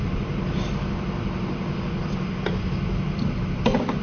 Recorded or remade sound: recorded